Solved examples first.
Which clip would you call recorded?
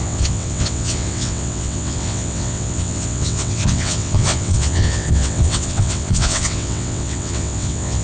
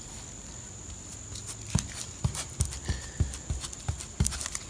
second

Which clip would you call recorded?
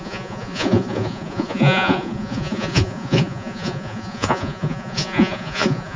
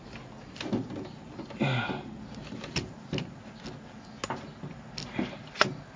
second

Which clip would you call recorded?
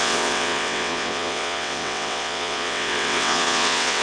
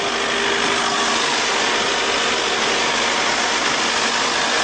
second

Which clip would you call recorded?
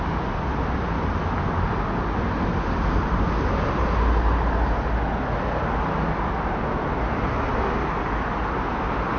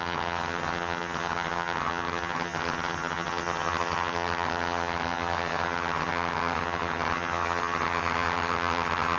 first